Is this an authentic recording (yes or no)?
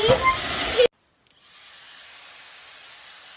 yes